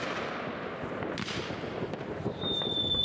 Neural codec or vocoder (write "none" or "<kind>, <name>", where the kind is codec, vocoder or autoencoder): none